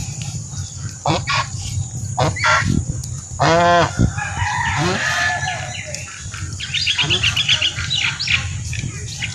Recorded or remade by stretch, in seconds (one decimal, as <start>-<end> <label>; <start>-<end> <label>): 0.0-2.2 remade; 2.2-9.3 recorded